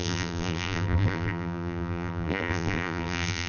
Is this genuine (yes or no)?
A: no